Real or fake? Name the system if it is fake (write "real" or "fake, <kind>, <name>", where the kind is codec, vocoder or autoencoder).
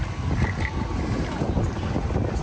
real